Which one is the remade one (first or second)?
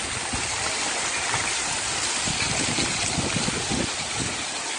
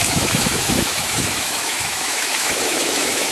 second